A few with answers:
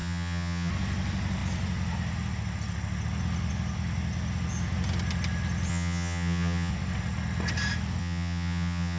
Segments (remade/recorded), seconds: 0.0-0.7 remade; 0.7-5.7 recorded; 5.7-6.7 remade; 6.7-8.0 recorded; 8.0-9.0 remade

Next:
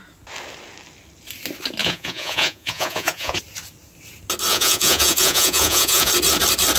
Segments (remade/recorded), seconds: 0.0-1.8 recorded; 1.8-3.4 remade; 3.4-4.5 recorded; 4.5-6.1 remade; 6.1-6.8 recorded

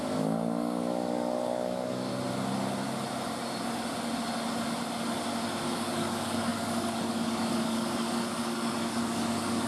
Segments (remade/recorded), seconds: 0.0-2.1 remade; 2.1-5.6 recorded; 5.6-9.7 remade

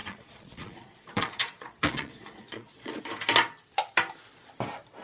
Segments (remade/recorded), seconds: 0.0-3.0 remade; 3.0-5.0 recorded

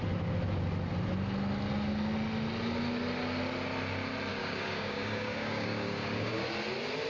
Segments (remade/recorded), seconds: 0.0-4.3 recorded; 4.3-6.4 remade; 6.4-7.1 recorded